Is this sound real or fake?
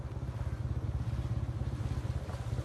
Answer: real